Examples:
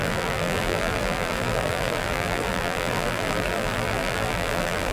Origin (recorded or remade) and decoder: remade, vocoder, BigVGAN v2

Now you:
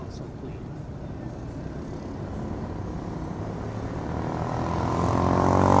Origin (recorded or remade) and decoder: recorded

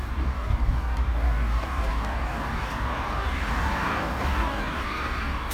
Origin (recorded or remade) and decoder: remade, codec, DAC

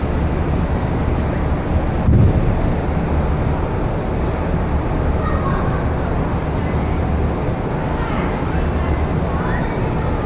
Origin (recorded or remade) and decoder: recorded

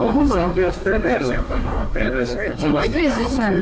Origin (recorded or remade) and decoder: remade, codec, SNAC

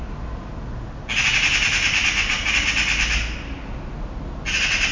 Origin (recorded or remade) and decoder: recorded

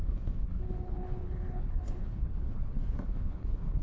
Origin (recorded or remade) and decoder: remade, codec, HILCodec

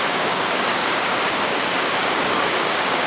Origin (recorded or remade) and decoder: remade, codec, DAC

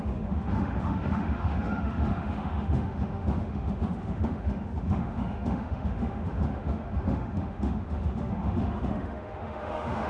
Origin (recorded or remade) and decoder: remade, autoencoder, DAC-VAE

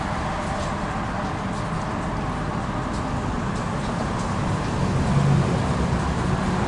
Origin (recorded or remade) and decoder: recorded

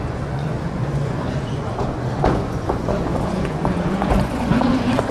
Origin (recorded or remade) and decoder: remade, vocoder, Vocos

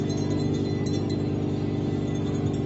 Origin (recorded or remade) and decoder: recorded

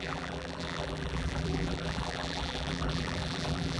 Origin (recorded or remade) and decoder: remade, vocoder, BigVGAN v2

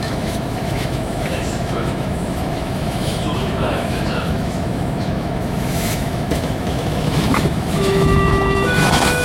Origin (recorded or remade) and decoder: remade, autoencoder, DAC-VAE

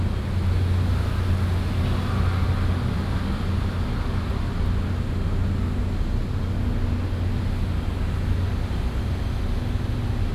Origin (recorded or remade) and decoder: recorded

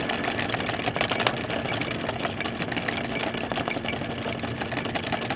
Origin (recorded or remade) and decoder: recorded